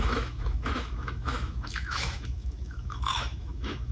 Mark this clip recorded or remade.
remade